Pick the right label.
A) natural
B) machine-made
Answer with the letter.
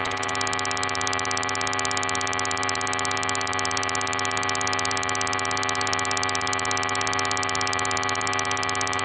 B